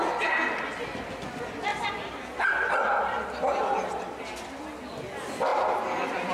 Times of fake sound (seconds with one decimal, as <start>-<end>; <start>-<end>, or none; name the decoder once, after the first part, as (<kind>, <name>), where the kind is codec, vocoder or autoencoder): 5.5-6.3 (vocoder, BigVGAN v2)